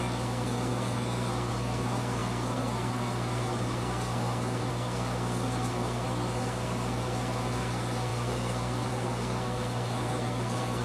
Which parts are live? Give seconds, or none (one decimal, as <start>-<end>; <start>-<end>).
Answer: none